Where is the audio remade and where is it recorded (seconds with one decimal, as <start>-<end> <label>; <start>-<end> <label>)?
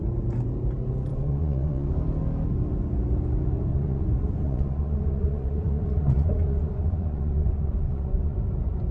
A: 0.0-1.1 recorded; 1.1-1.9 remade; 1.9-3.7 recorded; 3.7-8.4 remade; 8.4-8.9 recorded